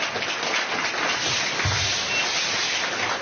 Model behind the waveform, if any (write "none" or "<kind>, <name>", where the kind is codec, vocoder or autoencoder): none